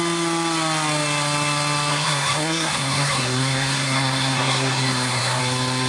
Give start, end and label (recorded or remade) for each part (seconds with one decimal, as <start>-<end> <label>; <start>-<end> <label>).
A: 0.0-1.9 recorded; 1.9-5.4 remade; 5.4-5.9 recorded